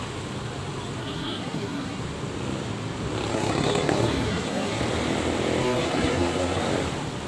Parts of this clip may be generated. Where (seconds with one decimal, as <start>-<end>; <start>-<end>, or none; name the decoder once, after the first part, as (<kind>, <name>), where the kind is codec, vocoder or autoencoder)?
1.0-2.0 (codec, SNAC); 3.3-4.8; 5.6-6.6